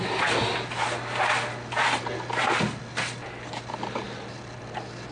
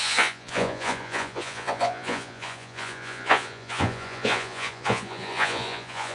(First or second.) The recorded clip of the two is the first